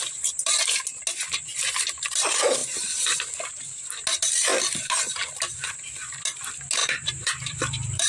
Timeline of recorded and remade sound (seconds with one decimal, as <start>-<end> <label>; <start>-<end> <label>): 0.0-6.8 recorded; 6.8-8.1 remade